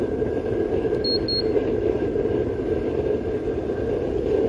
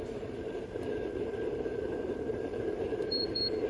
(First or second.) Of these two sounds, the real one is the first